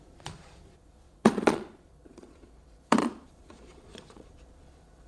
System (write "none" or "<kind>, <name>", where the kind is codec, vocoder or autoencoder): vocoder, Vocos